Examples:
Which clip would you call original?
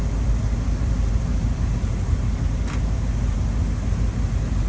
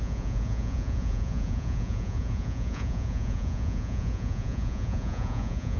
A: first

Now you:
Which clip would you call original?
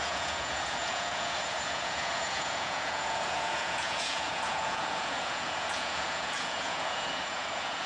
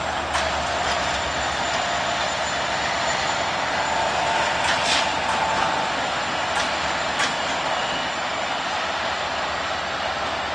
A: second